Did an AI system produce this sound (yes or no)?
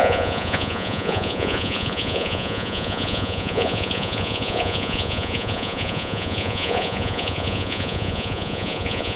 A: yes